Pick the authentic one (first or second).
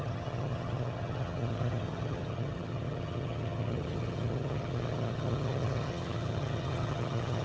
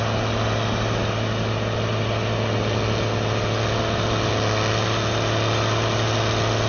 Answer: second